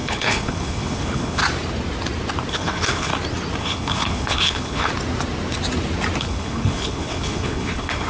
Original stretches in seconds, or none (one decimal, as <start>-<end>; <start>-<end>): 1.4-2.5; 3.1-3.6; 4.9-6.2